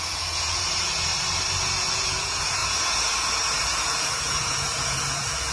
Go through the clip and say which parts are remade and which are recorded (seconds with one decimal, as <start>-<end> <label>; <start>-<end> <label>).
0.0-1.1 remade; 1.1-1.6 recorded; 1.6-5.5 remade